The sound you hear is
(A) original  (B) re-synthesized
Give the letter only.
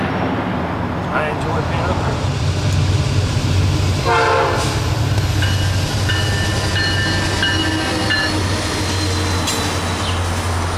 A